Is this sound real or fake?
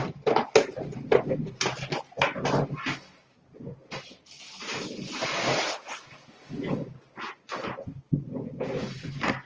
real